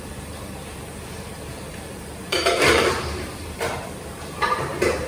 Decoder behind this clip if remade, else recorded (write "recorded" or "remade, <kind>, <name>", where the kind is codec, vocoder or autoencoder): remade, vocoder, BigVGAN v2